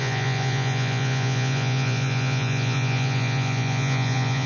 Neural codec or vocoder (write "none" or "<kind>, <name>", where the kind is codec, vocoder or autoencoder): vocoder, Vocos